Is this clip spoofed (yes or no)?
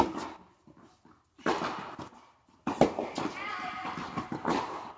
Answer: no